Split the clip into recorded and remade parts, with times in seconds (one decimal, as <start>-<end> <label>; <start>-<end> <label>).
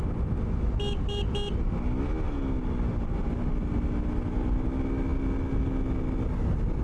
0.0-6.8 recorded